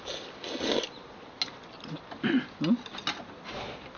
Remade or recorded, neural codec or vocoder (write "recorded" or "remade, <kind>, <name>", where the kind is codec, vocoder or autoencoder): recorded